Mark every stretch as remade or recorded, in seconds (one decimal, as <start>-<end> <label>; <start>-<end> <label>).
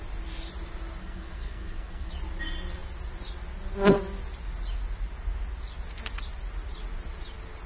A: 0.0-1.0 recorded; 1.0-2.1 remade; 2.1-7.7 recorded